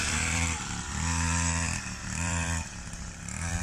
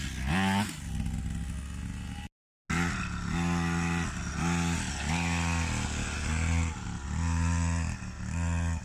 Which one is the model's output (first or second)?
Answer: first